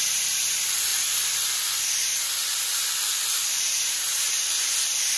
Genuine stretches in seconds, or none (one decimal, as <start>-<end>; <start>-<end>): 0.0-5.2